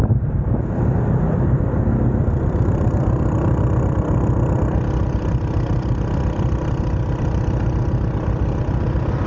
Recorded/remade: remade